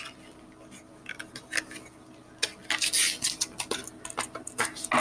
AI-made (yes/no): no